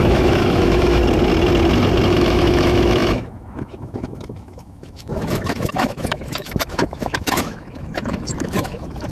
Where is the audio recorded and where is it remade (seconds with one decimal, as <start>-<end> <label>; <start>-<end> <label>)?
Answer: 0.0-1.0 remade; 1.0-2.1 recorded; 2.1-9.1 remade